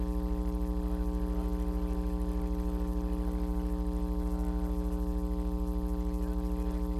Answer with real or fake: real